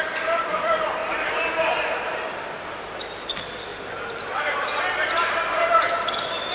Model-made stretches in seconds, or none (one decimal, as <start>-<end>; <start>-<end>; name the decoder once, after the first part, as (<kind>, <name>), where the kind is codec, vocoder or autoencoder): 0.0-1.0 (vocoder, BigVGAN v2); 2.2-6.5